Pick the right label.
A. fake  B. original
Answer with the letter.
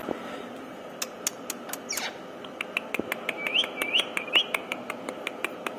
B